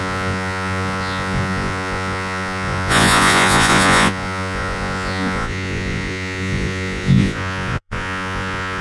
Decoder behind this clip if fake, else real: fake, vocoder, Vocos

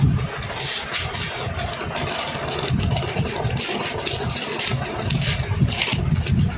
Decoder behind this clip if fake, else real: real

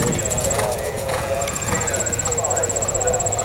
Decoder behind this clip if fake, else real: fake, vocoder, Vocos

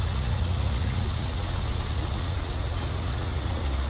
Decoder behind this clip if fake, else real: fake, vocoder, Vocos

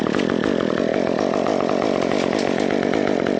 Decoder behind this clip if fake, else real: real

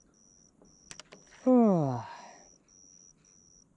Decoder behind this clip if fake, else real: real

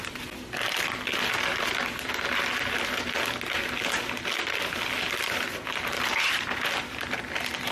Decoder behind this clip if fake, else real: real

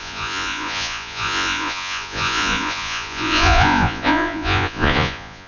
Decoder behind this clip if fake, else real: fake, vocoder, Vocos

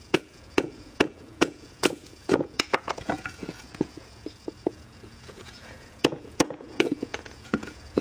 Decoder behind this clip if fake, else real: fake, vocoder, Vocos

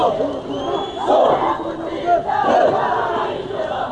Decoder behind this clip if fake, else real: real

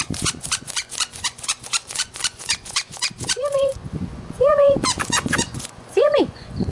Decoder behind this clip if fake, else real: fake, vocoder, Vocos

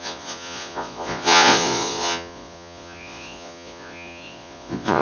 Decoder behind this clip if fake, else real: fake, vocoder, Vocos